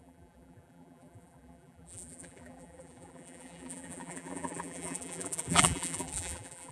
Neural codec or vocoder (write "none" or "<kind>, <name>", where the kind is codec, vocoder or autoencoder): vocoder, BigVGAN v2